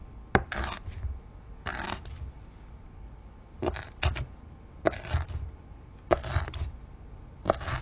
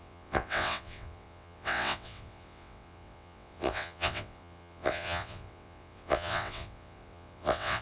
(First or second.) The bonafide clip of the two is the first